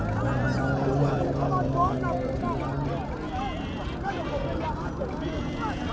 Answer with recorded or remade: recorded